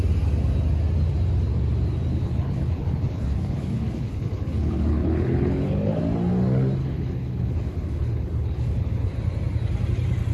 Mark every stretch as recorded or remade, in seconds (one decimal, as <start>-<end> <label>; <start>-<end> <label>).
0.0-2.1 recorded; 2.1-6.0 remade; 6.0-6.8 recorded; 6.8-9.1 remade; 9.1-10.3 recorded